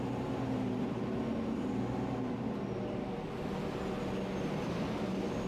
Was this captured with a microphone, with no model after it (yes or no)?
yes